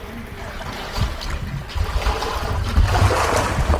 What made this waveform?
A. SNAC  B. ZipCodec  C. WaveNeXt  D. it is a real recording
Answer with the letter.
D